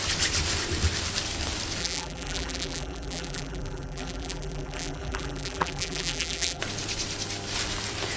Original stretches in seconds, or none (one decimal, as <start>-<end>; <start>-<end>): 0.0-1.8; 6.6-8.2